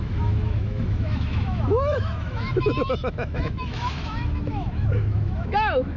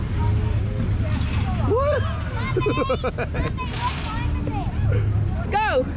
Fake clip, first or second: first